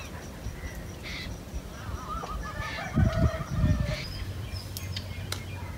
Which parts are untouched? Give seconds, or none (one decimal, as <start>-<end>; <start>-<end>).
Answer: 0.0-5.8